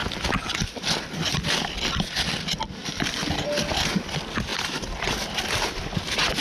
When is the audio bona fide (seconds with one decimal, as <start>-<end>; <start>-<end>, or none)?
0.0-6.4

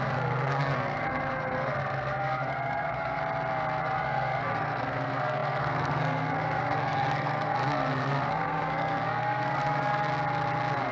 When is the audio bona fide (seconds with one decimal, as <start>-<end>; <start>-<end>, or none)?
3.2-3.8; 10.1-10.9

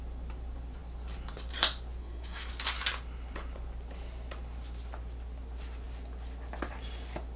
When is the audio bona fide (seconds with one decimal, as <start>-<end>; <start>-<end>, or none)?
0.0-2.0; 2.5-7.4

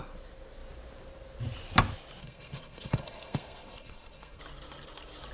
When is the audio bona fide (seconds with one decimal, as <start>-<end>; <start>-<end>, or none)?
0.0-2.2; 4.4-5.3

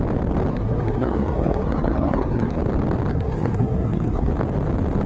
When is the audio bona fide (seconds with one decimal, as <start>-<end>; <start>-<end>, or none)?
0.0-0.5; 2.6-3.1; 4.3-5.1

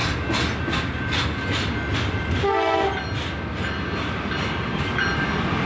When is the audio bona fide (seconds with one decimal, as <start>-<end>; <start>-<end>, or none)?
0.0-5.7